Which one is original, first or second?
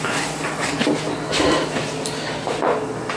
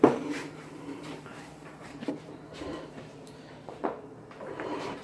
first